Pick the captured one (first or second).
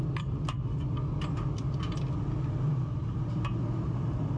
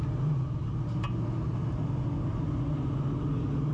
second